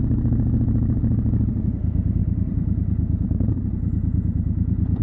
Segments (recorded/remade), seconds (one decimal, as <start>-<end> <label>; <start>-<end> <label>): 0.0-5.0 remade